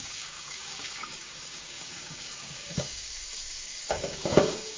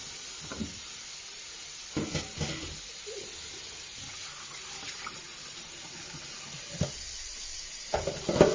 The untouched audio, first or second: second